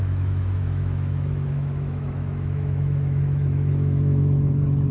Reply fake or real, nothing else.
fake